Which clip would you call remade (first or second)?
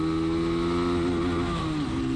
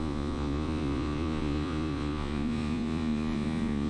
second